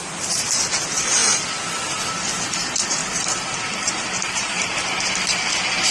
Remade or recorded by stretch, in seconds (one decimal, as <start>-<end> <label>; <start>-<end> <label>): 0.0-3.0 recorded; 3.0-4.5 remade; 4.5-5.9 recorded